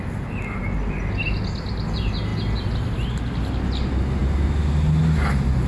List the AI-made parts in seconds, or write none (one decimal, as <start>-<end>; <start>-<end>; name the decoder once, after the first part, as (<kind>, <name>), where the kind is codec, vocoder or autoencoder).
none